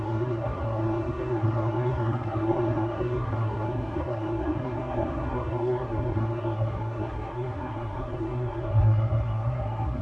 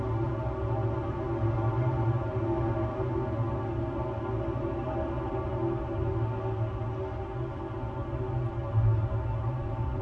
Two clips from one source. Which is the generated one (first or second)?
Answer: first